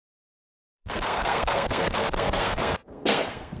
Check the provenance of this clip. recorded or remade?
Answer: remade